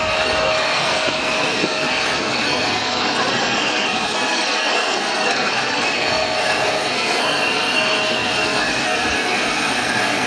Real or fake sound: fake